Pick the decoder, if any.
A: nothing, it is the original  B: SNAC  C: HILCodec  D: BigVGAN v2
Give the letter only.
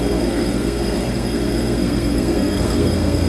B